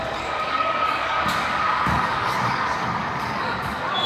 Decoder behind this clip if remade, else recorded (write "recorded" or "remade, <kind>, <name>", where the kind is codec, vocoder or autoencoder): remade, codec, DAC